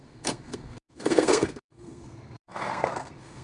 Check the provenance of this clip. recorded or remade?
remade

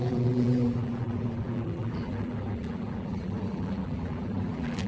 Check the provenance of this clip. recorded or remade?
remade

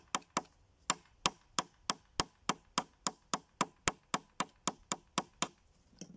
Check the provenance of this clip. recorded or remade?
recorded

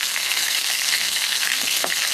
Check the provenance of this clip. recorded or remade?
remade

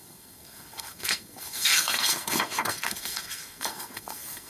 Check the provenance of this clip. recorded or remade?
remade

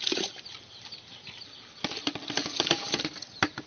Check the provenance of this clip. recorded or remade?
remade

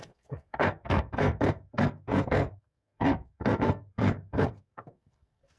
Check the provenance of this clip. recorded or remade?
remade